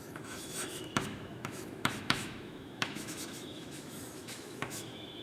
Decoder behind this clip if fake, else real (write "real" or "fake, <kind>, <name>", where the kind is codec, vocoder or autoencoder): fake, autoencoder, DAC-VAE